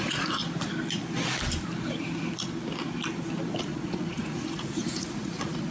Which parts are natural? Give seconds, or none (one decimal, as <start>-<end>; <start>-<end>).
0.4-3.6